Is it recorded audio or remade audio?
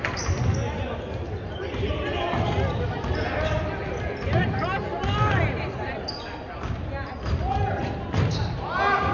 recorded